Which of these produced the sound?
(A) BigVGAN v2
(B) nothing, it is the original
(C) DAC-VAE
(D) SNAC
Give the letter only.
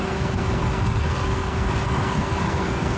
D